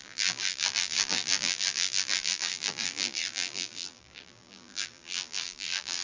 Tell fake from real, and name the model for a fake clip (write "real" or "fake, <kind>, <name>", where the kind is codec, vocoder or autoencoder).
fake, vocoder, BigVGAN v2